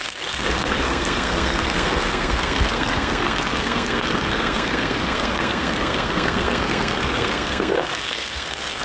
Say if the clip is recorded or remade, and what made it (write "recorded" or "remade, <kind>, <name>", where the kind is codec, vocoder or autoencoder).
remade, codec, SNAC